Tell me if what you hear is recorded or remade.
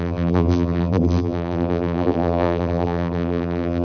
remade